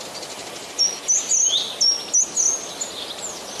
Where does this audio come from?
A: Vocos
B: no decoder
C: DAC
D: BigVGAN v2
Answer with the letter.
B